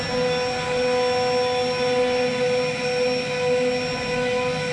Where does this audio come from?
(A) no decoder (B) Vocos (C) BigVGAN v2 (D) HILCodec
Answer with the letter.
A